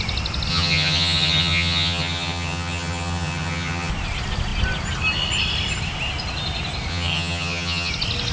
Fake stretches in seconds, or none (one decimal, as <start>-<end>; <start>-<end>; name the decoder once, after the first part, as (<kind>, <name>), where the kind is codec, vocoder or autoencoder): 0.5-3.9 (vocoder, HiFi-GAN); 6.9-7.9